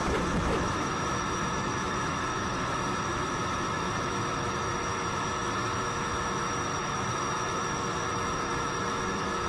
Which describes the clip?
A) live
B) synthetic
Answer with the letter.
B